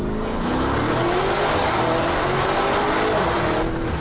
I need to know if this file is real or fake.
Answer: real